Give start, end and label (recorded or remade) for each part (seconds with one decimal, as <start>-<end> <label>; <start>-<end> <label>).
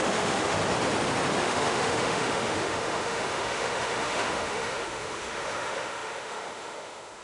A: 0.0-0.6 remade; 0.6-1.4 recorded; 1.4-7.2 remade